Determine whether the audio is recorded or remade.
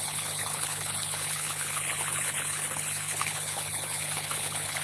remade